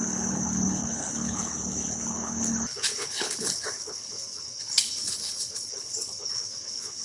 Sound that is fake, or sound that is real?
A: fake